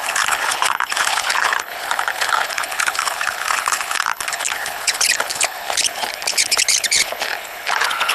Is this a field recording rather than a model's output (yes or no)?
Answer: no